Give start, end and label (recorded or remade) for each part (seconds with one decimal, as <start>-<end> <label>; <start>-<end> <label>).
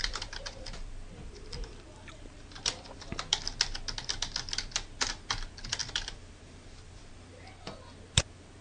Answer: 0.0-3.4 remade; 3.4-5.8 recorded; 5.8-7.1 remade; 7.1-8.6 recorded